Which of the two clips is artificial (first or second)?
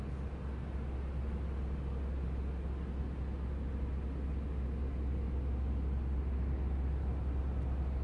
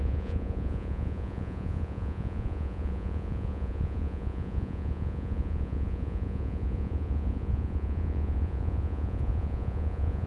second